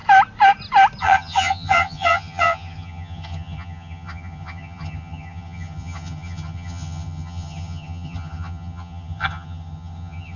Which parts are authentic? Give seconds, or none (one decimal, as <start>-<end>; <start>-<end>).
0.0-1.0